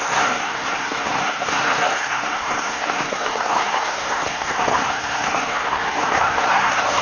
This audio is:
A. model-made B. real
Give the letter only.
A